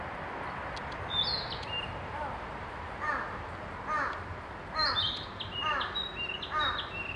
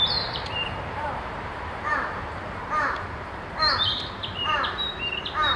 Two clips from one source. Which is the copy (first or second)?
second